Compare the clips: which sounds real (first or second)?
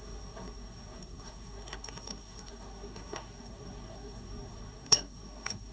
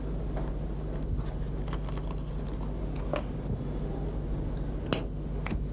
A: second